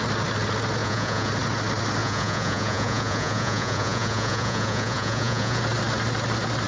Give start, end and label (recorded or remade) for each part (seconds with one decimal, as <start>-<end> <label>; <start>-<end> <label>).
0.0-0.8 recorded; 0.8-1.3 remade; 1.3-2.0 recorded; 2.0-5.6 remade; 5.6-6.7 recorded